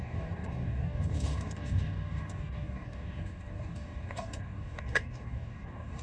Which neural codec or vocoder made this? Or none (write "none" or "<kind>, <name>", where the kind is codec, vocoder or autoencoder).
codec, DAC